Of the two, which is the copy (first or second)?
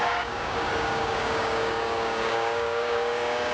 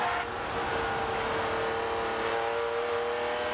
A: first